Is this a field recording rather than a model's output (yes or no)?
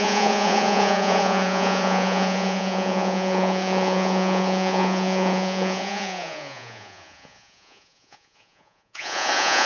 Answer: no